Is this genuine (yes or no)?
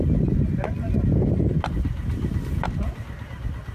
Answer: yes